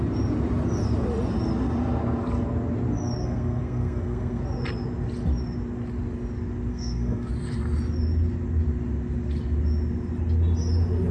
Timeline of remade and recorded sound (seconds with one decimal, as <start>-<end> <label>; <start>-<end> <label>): 0.0-3.2 recorded; 3.2-4.4 remade; 4.4-6.7 recorded; 6.7-7.3 remade; 7.3-11.1 recorded